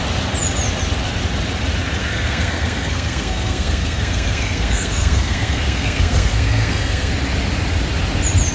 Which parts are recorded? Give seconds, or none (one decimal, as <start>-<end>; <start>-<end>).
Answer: 0.0-2.0; 7.1-8.5